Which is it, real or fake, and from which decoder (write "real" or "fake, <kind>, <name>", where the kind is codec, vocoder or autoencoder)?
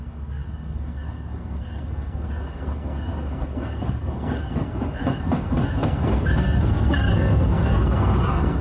fake, codec, SNAC